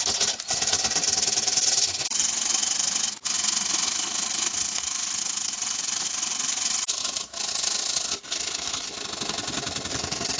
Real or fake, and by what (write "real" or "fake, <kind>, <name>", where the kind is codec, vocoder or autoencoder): real